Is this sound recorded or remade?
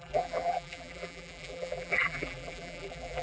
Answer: remade